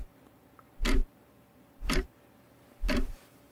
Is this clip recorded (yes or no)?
no